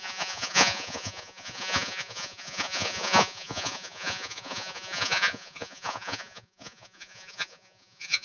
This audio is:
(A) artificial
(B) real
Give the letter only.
A